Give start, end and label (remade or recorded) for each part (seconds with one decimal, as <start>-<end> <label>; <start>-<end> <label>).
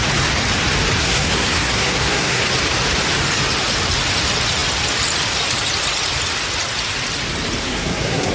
0.0-1.0 recorded; 1.0-2.4 remade; 2.4-7.6 recorded; 7.6-8.3 remade